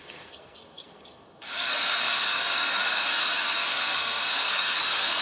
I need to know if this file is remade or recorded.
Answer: remade